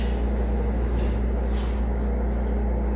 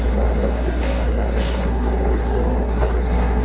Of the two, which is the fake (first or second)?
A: second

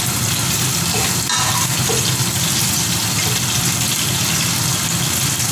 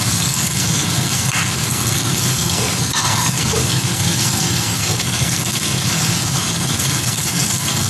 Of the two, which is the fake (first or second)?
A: second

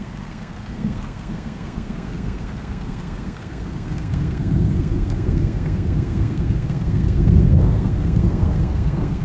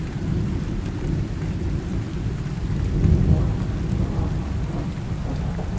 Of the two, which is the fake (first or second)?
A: first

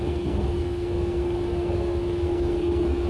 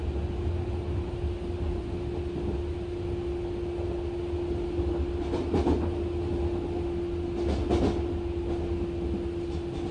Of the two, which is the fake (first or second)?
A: first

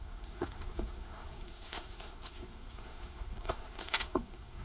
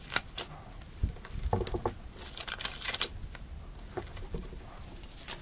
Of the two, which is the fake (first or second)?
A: first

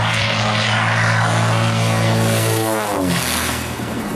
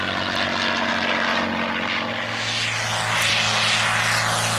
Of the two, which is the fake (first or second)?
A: first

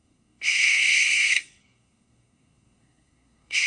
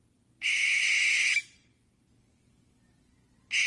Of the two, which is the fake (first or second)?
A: first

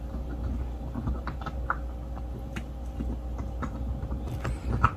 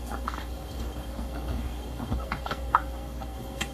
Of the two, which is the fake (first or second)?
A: second